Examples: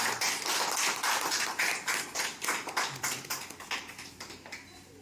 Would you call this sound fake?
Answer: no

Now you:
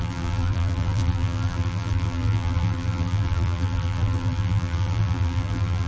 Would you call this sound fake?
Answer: yes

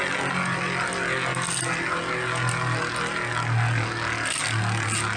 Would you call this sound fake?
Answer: no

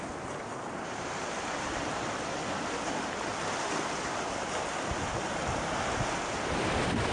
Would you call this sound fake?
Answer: yes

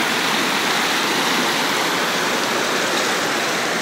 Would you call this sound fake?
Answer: no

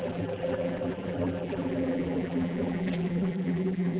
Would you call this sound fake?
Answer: yes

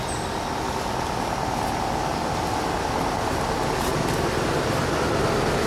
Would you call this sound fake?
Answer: no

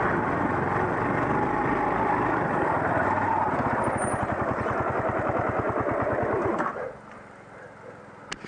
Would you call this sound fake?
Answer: no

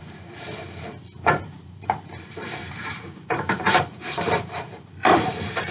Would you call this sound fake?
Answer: yes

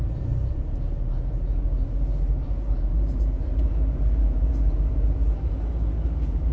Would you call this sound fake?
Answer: yes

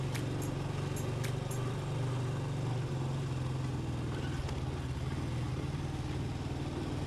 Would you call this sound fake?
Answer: no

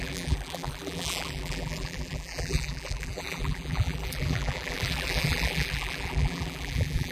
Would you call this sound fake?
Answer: yes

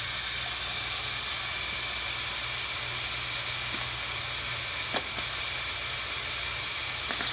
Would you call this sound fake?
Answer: no